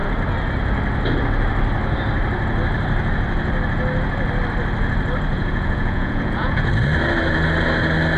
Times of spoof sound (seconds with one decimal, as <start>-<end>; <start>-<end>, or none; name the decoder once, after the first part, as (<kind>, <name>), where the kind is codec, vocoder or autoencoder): 5.3-6.7 (vocoder, Vocos)